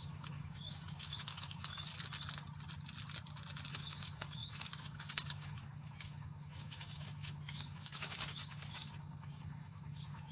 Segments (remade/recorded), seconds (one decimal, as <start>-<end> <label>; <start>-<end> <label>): 0.0-1.9 remade; 1.9-3.7 recorded; 3.7-10.3 remade